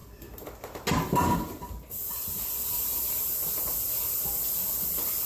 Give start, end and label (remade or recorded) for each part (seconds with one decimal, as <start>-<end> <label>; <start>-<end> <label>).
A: 0.0-5.3 recorded